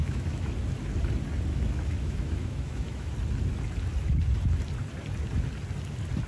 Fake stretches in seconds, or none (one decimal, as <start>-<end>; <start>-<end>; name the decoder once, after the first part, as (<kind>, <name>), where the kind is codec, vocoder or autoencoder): 0.0-0.5 (autoencoder, DAC-VAE); 1.5-3.1